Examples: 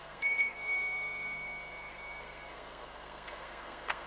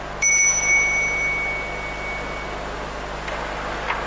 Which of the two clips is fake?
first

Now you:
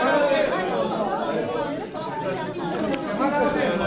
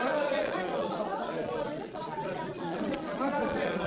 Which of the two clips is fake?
second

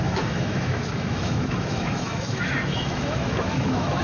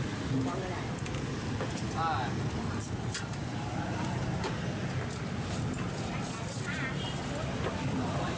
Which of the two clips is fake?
first